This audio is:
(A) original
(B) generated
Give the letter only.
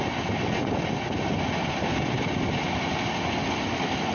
A